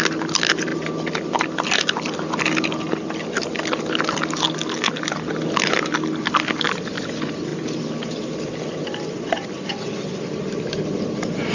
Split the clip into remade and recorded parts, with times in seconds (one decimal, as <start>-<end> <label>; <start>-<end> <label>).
0.0-11.5 recorded